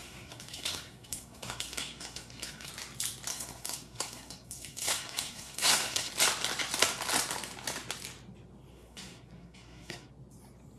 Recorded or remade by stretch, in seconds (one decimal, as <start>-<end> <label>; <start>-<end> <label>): 0.0-2.7 remade; 2.7-3.3 recorded; 3.3-6.1 remade; 6.1-8.7 recorded; 8.7-10.1 remade; 10.1-10.8 recorded